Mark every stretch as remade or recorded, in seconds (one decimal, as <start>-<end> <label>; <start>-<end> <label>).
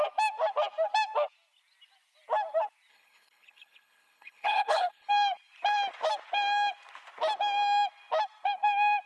0.0-2.9 recorded; 2.9-5.1 remade; 5.1-9.1 recorded